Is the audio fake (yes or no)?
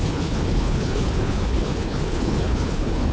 yes